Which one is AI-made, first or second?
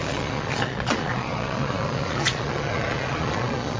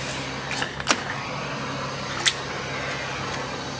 first